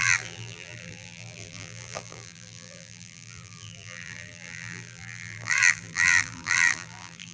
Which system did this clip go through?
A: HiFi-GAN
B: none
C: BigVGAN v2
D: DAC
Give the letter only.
C